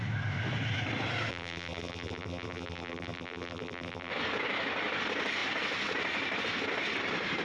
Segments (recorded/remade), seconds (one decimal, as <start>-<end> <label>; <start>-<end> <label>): 0.0-1.3 recorded; 1.3-4.1 remade; 4.1-7.4 recorded